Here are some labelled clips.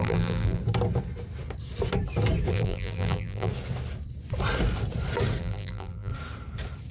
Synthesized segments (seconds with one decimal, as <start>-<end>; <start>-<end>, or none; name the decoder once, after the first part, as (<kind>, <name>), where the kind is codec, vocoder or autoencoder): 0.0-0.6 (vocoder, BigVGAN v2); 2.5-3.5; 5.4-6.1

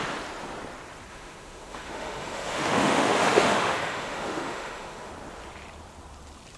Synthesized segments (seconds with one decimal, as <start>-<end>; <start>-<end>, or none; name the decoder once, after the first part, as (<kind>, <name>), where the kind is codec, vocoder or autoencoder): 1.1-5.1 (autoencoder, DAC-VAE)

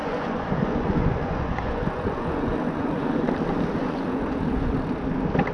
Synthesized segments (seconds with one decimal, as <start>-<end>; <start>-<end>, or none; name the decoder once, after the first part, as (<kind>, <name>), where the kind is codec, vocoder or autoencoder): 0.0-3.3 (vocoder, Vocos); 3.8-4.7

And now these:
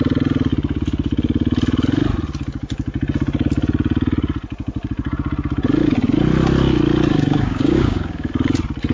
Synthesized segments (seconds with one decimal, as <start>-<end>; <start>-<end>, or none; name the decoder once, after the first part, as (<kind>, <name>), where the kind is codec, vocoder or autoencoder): 7.1-8.3 (codec, DAC)

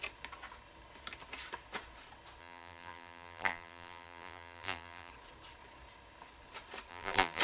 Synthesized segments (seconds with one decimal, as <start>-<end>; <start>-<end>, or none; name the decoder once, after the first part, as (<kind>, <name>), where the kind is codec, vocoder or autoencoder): 2.4-5.1 (vocoder, BigVGAN v2); 6.9-7.4

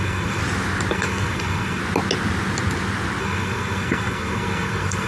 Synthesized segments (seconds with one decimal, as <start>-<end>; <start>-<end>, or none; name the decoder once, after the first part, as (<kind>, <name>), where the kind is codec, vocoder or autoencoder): 0.0-0.4 (codec, SNAC); 0.9-1.8; 3.2-5.1

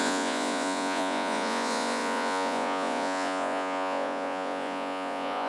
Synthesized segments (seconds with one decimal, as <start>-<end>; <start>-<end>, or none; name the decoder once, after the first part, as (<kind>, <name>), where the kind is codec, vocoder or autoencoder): 0.0-5.5 (vocoder, Vocos)

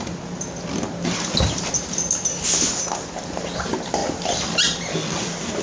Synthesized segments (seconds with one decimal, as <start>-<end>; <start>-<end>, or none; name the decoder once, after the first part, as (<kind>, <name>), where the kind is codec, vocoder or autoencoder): none